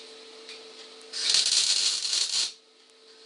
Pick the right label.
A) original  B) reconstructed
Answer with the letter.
A